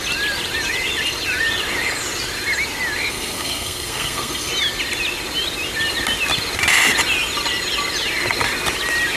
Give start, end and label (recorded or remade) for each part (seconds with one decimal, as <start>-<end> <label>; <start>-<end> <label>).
0.0-3.1 recorded; 3.1-4.5 remade; 4.5-9.2 recorded